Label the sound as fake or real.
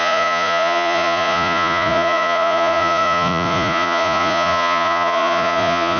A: fake